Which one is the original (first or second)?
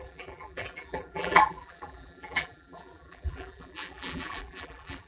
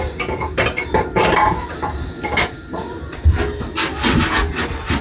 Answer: second